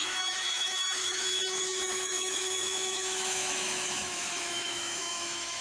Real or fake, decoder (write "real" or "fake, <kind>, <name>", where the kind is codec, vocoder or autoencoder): fake, autoencoder, DAC-VAE